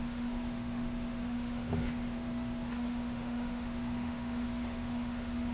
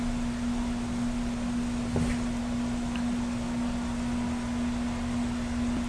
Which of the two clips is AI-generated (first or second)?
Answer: first